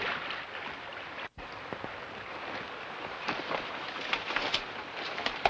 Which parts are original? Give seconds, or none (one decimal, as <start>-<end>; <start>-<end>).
0.0-5.5